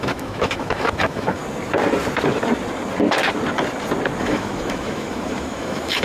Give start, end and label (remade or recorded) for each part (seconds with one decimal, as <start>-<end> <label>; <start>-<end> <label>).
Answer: 0.0-1.4 remade; 1.4-4.2 recorded; 4.2-6.0 remade